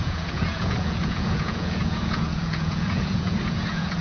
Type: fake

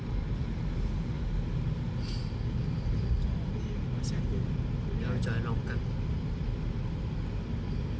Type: real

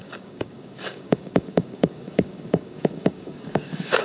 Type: fake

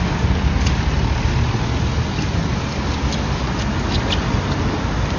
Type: real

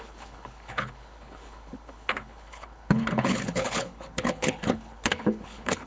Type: fake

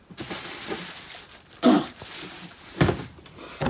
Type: real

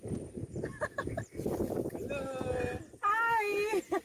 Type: real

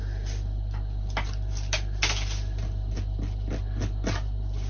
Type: real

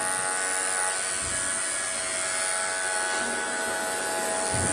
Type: real